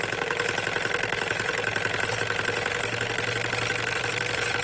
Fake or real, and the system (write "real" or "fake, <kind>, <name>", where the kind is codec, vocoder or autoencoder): real